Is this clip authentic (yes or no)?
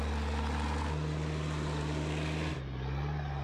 yes